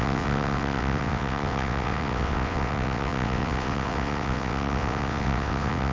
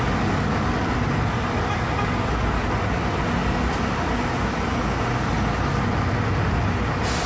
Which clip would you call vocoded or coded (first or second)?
first